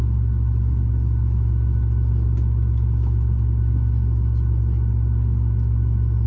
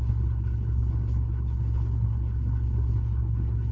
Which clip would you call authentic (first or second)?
first